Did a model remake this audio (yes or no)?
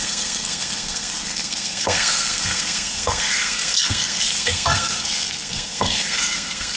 yes